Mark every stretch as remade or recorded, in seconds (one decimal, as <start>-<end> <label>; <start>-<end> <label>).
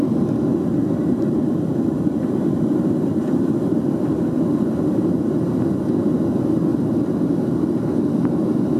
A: 0.0-0.5 recorded; 0.5-3.6 remade; 3.6-8.8 recorded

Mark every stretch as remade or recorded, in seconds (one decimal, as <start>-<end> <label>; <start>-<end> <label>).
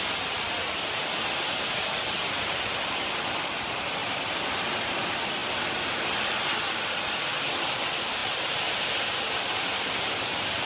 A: 0.0-8.2 recorded; 8.2-10.7 remade